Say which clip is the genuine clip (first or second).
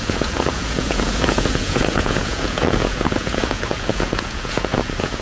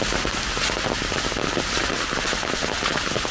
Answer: second